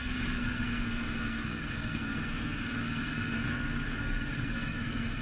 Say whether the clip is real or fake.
fake